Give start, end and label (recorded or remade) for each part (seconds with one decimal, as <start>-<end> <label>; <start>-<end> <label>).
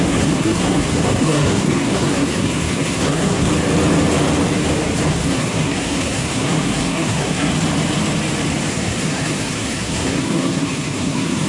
0.0-3.5 remade; 3.5-5.1 recorded; 5.1-7.5 remade; 7.5-8.7 recorded; 8.7-11.5 remade